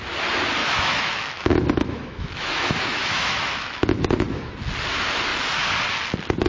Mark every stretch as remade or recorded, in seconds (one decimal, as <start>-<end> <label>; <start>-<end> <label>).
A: 0.0-0.6 recorded; 0.6-4.5 remade; 4.5-6.5 recorded